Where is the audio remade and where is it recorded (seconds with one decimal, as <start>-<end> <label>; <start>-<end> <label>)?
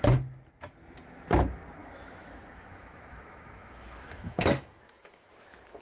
0.0-1.8 recorded; 1.8-5.3 remade; 5.3-5.8 recorded